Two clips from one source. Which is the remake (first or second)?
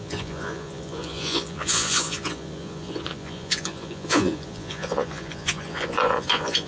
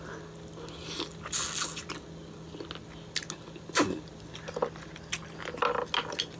first